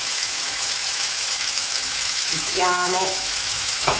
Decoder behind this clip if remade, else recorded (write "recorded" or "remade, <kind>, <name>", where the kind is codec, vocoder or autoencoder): remade, autoencoder, DAC-VAE